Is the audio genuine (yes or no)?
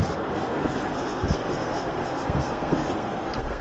no